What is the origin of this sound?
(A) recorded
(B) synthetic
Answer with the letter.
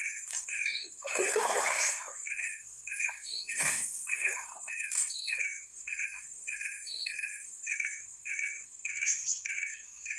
B